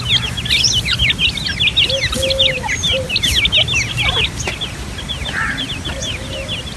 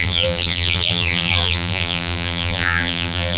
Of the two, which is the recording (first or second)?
first